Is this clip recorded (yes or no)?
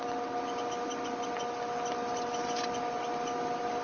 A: yes